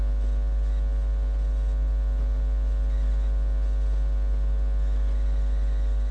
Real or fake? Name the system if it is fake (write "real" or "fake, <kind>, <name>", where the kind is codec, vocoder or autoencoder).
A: fake, vocoder, BigVGAN v2